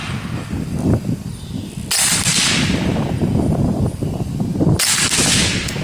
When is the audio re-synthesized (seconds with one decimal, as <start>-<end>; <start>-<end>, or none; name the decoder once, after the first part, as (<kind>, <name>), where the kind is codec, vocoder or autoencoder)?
none